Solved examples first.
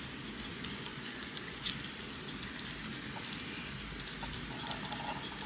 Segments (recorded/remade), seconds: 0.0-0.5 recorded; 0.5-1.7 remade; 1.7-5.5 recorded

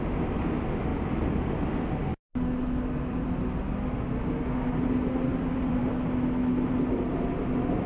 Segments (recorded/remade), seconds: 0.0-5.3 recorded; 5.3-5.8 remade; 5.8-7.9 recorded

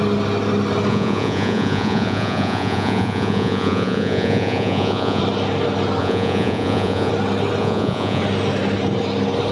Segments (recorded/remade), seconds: 0.0-0.9 recorded; 0.9-5.2 remade; 5.2-6.0 recorded; 6.0-7.1 remade; 7.1-7.6 recorded; 7.6-8.2 remade; 8.2-9.5 recorded

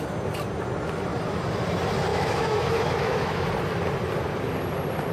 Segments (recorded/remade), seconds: 0.0-2.1 recorded; 2.1-3.5 remade; 3.5-5.1 recorded